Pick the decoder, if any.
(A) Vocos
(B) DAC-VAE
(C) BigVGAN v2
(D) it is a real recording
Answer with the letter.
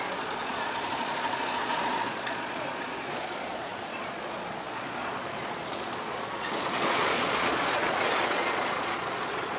A